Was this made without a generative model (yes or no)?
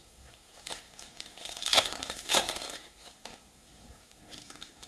no